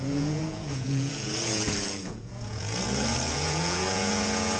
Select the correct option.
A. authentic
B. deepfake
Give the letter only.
B